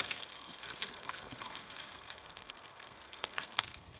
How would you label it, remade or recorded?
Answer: remade